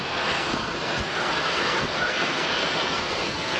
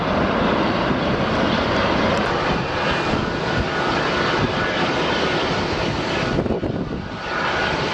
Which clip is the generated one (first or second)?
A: first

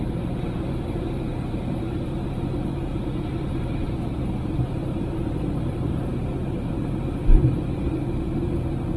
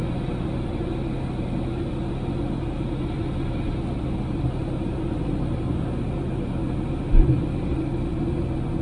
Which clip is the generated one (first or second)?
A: first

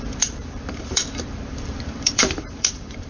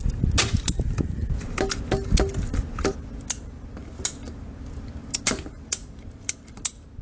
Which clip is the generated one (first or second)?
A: first